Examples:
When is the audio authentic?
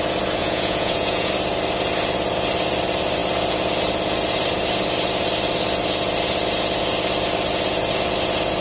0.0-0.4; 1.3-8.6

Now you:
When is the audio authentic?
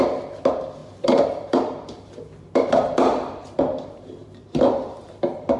0.0-0.8; 3.6-4.2; 5.0-5.6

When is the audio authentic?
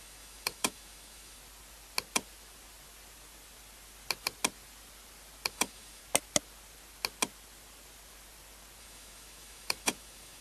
1.4-5.5; 6.0-8.8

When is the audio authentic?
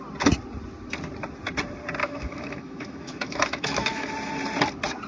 0.0-2.0; 4.1-5.1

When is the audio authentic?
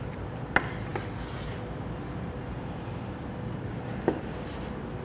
0.0-5.0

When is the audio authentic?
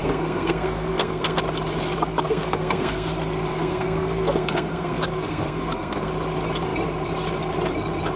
1.4-2.2; 3.1-3.5; 6.1-8.2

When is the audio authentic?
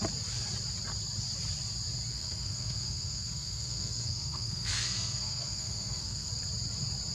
0.0-2.1; 6.3-7.1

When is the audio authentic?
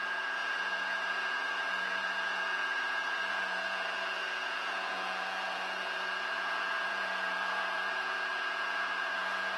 none